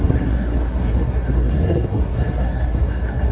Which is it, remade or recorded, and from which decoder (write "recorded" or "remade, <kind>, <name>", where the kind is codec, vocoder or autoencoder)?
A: remade, codec, SNAC